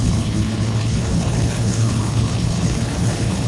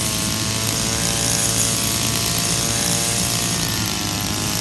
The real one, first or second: second